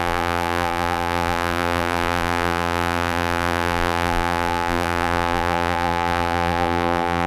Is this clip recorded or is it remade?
remade